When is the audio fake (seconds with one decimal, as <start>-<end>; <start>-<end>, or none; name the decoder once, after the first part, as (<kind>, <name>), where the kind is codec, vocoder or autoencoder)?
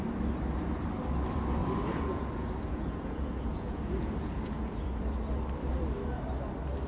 1.6-5.0 (vocoder, Vocos)